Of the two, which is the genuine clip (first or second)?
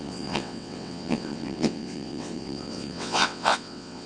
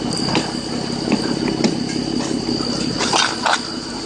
second